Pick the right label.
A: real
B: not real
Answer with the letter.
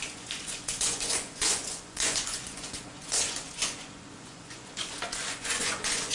B